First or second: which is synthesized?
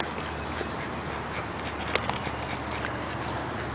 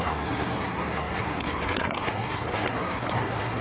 second